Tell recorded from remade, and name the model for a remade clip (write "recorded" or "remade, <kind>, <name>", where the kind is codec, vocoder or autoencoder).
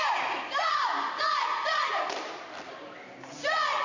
recorded